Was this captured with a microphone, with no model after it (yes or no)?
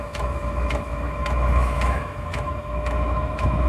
no